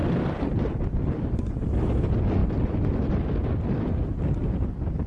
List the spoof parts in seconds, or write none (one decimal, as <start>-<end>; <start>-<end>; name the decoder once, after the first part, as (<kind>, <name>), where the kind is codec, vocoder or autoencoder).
0.0-1.4 (vocoder, BigVGAN v2)

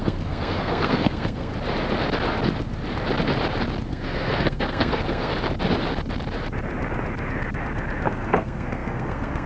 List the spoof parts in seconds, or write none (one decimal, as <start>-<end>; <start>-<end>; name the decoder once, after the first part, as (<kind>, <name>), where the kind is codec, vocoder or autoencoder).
0.0-1.5 (codec, SNAC); 3.9-5.3; 8.1-9.5

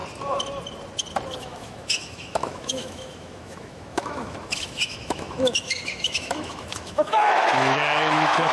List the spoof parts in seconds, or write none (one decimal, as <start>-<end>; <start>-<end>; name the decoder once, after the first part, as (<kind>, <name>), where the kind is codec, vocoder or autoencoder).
1.4-8.5 (autoencoder, DAC-VAE)

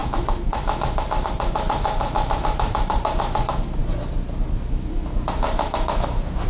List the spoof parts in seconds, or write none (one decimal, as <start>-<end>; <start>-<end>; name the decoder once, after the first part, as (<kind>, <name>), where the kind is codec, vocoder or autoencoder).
0.0-3.8 (autoencoder, DAC-VAE); 4.6-6.5

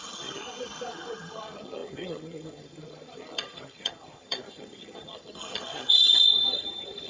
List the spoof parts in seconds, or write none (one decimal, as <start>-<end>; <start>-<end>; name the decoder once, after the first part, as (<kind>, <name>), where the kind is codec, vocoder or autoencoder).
0.0-7.1 (vocoder, HiFi-GAN)

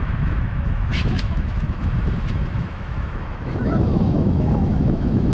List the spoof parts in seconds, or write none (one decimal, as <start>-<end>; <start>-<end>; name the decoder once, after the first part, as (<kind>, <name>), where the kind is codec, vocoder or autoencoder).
0.0-5.3 (autoencoder, DAC-VAE)